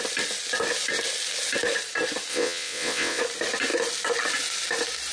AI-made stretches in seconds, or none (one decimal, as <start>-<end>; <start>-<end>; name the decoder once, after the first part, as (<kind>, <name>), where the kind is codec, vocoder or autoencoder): 2.3-3.2 (vocoder, WaveNeXt)